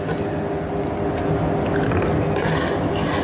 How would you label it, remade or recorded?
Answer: recorded